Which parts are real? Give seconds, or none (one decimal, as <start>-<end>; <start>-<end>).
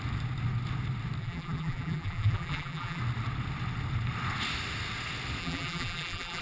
0.0-1.2; 3.0-5.4